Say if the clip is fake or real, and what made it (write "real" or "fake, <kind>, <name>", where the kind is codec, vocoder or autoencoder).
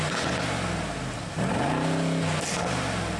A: real